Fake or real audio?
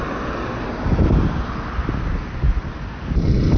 real